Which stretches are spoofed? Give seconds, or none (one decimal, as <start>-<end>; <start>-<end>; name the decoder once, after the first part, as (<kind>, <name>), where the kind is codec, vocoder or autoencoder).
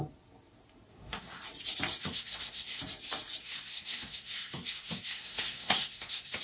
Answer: 0.9-1.4 (codec, SNAC); 2.0-2.8; 3.4-6.4